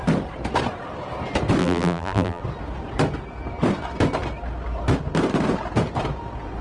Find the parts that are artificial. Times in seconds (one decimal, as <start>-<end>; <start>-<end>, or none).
1.6-2.4